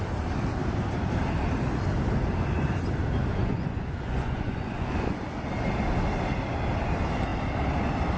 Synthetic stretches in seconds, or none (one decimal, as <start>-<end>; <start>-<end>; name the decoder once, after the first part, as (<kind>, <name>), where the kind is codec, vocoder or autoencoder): 3.3-5.2 (vocoder, Vocos)